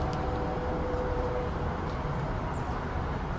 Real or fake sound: fake